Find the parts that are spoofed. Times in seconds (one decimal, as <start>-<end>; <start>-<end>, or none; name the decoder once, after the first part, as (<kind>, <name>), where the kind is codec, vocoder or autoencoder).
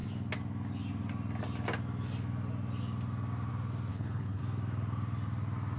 3.9-4.4 (codec, HILCodec)